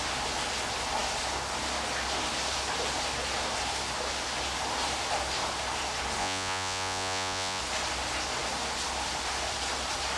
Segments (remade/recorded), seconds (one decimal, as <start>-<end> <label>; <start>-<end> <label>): 0.0-6.2 recorded; 6.2-7.6 remade; 7.6-10.2 recorded